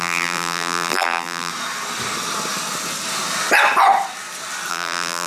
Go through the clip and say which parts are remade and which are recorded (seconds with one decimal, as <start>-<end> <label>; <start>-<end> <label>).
0.0-1.5 remade; 1.5-4.7 recorded; 4.7-5.3 remade